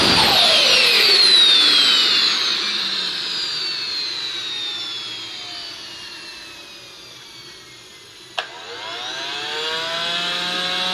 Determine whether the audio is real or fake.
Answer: real